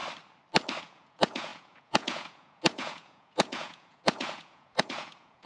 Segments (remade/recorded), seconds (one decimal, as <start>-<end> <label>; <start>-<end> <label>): 0.0-0.8 recorded; 0.8-5.5 remade